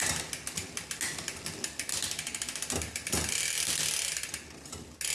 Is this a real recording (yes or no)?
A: yes